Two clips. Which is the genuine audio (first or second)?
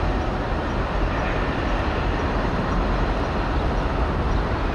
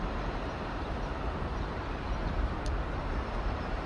first